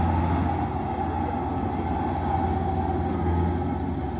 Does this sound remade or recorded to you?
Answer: recorded